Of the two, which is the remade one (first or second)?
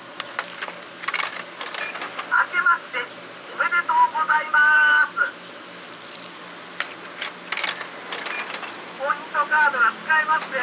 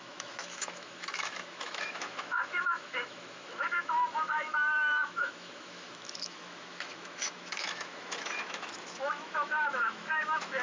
second